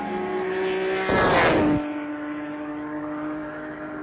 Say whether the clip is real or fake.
real